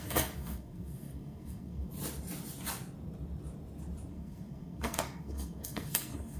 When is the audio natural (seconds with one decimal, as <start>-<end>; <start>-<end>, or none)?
1.9-4.1